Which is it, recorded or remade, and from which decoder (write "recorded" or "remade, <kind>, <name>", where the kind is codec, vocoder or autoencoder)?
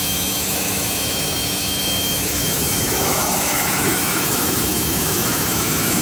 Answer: remade, autoencoder, DAC-VAE